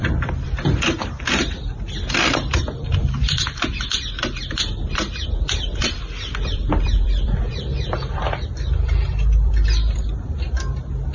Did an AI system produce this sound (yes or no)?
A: yes